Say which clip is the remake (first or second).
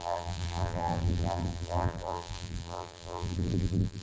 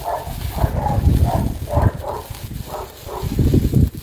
first